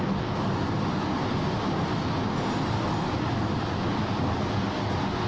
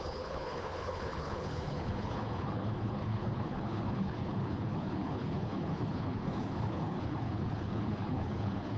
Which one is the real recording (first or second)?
first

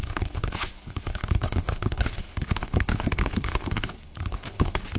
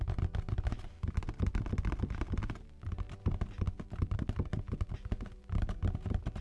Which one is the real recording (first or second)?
second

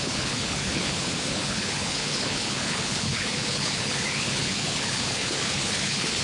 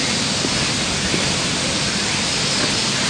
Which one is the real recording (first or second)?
second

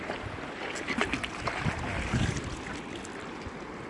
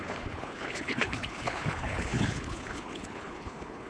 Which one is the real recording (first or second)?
first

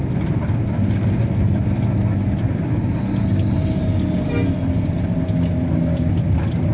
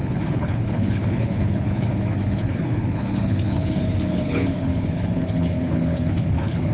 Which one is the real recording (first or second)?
first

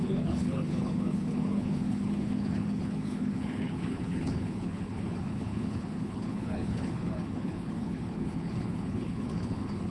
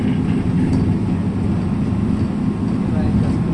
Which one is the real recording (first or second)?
second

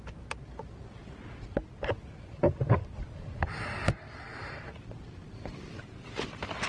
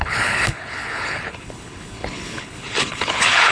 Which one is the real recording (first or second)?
first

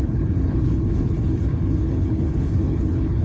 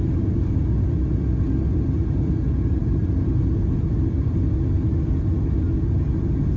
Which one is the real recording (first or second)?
second